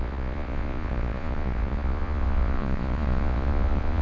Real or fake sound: fake